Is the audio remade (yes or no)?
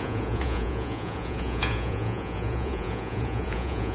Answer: yes